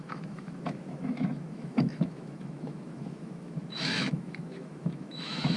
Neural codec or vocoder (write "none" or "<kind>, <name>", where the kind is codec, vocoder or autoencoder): autoencoder, DAC-VAE